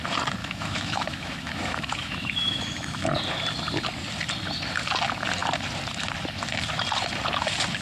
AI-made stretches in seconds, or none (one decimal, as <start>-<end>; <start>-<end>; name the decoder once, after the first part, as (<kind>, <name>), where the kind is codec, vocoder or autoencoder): 0.4-3.1 (autoencoder, DAC-VAE)